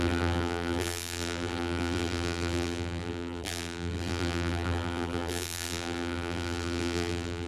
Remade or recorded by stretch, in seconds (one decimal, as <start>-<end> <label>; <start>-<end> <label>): 0.0-7.5 remade